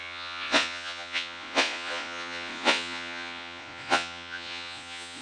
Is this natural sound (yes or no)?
no